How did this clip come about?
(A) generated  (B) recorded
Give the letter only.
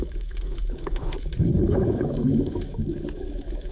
A